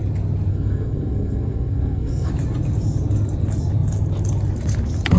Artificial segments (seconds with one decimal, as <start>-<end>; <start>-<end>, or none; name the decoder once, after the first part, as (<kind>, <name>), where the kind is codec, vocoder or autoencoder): 0.5-2.3 (codec, SNAC)